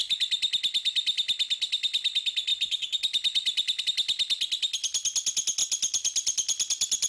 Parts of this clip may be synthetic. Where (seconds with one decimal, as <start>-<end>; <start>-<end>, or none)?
2.5-3.8; 5.6-7.1